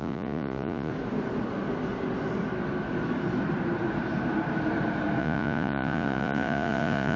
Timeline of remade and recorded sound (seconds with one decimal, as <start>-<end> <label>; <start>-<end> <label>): 0.0-0.9 remade; 0.9-5.2 recorded; 5.2-7.2 remade